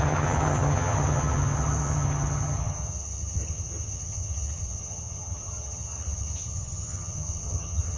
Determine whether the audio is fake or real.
fake